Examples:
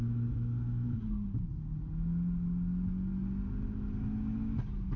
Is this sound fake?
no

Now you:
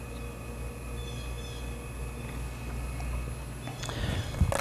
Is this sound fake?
no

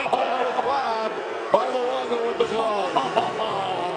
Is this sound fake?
yes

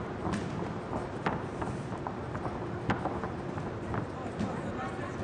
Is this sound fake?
no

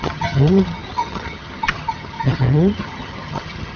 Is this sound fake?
yes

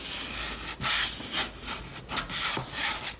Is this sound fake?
no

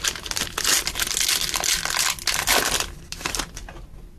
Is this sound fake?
no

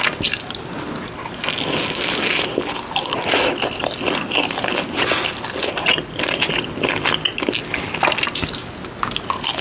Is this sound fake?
no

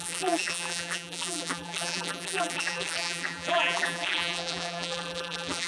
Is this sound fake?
yes